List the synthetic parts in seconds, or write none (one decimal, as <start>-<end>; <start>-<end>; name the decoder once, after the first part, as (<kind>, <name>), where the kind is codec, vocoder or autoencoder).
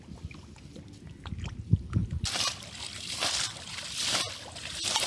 none